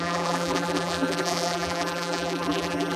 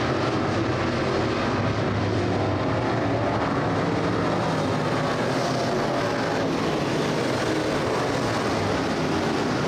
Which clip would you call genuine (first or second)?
second